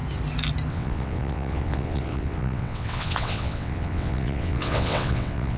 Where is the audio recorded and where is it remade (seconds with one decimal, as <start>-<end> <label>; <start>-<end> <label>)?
0.0-0.7 recorded; 0.7-5.6 remade